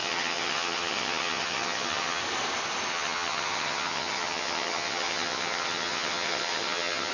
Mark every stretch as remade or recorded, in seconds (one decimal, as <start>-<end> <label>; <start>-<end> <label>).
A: 0.0-2.2 remade; 2.2-2.9 recorded; 2.9-7.1 remade